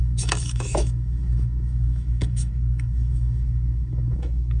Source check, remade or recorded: remade